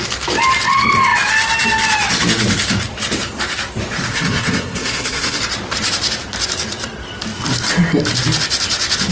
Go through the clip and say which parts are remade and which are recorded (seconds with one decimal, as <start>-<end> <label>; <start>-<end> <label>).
0.0-4.1 recorded; 4.1-5.4 remade; 5.4-9.1 recorded